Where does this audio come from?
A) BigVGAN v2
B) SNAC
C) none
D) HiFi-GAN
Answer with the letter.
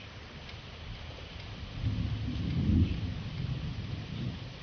C